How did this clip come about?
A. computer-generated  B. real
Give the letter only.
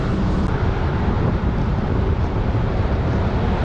A